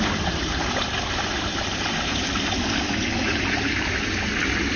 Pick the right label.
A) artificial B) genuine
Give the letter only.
B